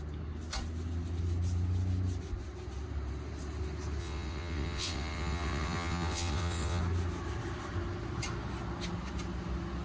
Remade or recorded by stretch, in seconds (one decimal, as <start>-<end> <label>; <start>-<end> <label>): 0.0-4.0 recorded; 4.0-6.8 remade; 6.8-9.8 recorded